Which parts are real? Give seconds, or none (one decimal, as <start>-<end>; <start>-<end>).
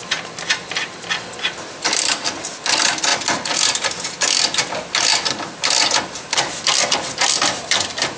0.0-8.2